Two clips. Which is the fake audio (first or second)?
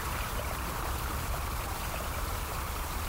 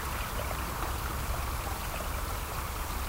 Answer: first